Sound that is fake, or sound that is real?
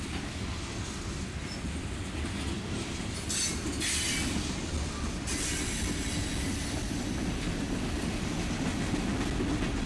real